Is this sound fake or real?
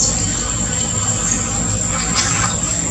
real